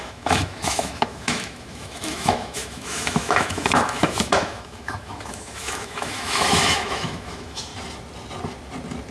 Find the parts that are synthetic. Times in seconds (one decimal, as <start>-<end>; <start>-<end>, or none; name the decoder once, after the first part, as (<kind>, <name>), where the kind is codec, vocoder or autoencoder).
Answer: 0.0-7.7 (autoencoder, DAC-VAE)

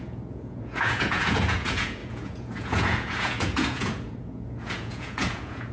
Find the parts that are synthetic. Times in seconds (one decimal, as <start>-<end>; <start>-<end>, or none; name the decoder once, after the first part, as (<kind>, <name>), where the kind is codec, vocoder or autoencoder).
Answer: 0.0-5.7 (vocoder, Vocos)